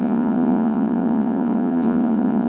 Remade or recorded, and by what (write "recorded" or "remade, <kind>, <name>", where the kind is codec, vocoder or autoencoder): remade, vocoder, Vocos